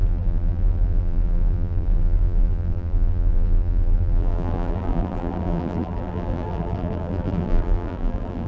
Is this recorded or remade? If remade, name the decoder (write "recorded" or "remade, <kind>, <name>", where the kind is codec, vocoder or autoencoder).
remade, vocoder, BigVGAN v2